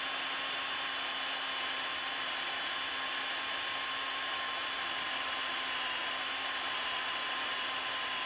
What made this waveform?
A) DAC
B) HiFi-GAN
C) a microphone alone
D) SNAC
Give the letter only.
C